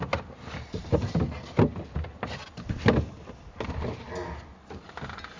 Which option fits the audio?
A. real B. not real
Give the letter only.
A